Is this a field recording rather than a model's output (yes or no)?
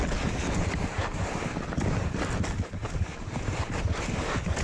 yes